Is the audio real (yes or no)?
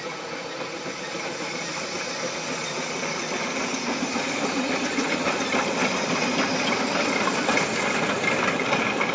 yes